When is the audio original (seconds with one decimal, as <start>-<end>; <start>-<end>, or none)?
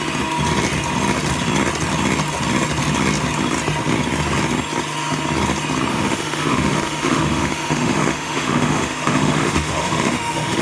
0.0-5.9